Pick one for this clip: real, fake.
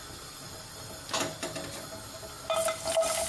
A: real